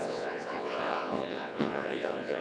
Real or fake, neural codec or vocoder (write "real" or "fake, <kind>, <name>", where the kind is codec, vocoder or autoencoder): fake, vocoder, WaveNeXt